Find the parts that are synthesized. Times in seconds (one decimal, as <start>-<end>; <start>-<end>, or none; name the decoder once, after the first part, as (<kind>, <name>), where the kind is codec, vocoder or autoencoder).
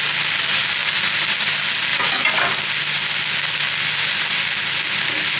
none